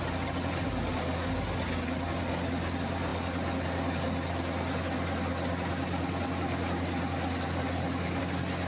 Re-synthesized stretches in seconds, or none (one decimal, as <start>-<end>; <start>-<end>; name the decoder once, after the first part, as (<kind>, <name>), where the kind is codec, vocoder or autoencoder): none